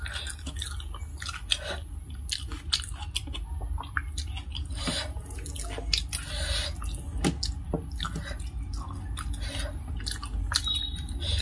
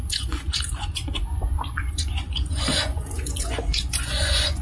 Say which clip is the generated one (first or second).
second